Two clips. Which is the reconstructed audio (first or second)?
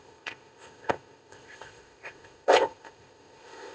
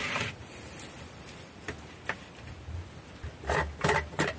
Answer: first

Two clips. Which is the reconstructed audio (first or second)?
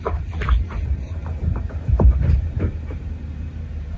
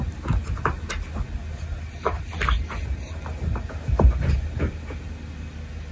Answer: first